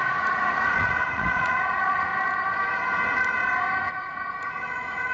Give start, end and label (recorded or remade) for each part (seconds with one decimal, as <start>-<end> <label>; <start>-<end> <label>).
0.0-2.1 remade; 2.1-3.9 recorded; 3.9-5.1 remade